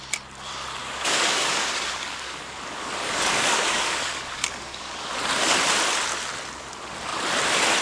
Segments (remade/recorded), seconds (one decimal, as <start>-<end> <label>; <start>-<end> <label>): 0.0-0.8 recorded; 0.8-5.1 remade; 5.1-7.8 recorded